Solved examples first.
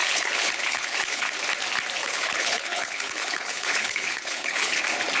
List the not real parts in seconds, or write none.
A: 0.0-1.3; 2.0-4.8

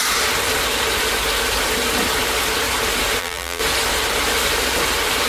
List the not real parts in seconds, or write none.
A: 3.2-3.6